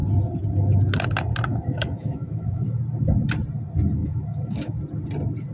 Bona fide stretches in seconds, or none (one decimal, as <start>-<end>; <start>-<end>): 0.0-1.5; 2.8-4.0; 4.8-5.5